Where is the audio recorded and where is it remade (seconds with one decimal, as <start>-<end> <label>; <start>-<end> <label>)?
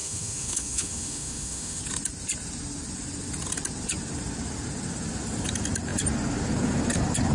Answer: 0.0-1.8 remade; 1.8-7.3 recorded